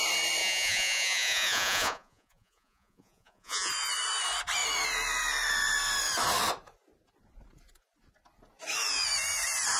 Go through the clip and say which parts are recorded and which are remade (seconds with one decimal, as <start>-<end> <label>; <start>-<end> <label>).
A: 0.0-0.4 recorded; 0.4-3.7 remade; 3.7-9.8 recorded

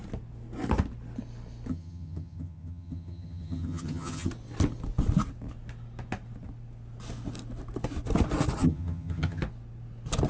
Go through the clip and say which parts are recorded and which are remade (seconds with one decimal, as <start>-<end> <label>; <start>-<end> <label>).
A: 0.0-1.7 recorded; 1.7-4.3 remade; 4.3-8.6 recorded; 8.6-9.4 remade; 9.4-10.3 recorded

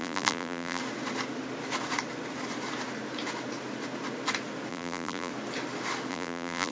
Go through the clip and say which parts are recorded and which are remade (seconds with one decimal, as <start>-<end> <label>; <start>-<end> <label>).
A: 0.0-0.8 remade; 0.8-4.7 recorded; 4.7-5.3 remade; 5.3-6.1 recorded; 6.1-6.7 remade

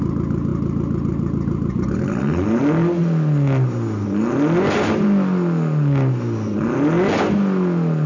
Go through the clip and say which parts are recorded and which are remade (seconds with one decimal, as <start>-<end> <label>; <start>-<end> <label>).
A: 0.0-8.1 recorded

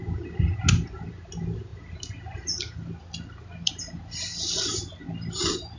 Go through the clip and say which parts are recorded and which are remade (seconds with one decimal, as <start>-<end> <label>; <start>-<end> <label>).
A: 0.0-5.8 recorded

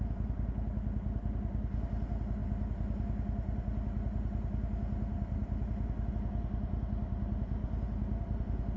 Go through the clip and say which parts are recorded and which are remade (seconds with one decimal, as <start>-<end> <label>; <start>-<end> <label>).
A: 0.0-8.8 recorded

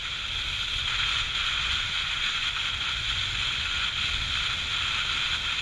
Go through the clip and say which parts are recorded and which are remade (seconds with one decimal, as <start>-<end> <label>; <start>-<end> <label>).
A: 0.0-0.7 recorded; 0.7-4.1 remade; 4.1-5.6 recorded